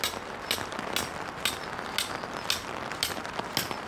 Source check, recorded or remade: recorded